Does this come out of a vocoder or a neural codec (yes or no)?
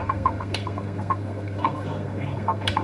yes